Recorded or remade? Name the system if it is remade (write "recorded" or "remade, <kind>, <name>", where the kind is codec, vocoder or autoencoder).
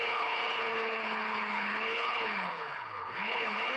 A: remade, codec, HILCodec